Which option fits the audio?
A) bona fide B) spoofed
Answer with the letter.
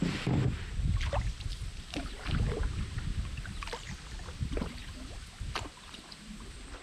B